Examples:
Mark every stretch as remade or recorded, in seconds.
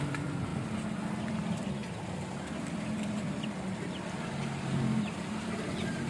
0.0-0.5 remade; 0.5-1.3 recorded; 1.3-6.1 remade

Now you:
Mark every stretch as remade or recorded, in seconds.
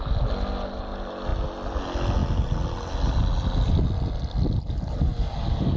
0.0-5.8 recorded